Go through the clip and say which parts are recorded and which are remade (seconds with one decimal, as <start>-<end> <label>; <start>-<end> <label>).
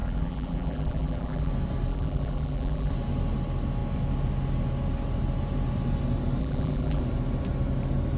0.0-1.5 remade; 1.5-1.9 recorded; 1.9-2.9 remade; 2.9-6.4 recorded; 6.4-7.0 remade; 7.0-8.2 recorded